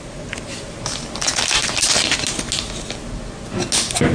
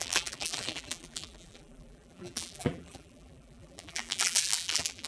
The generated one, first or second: second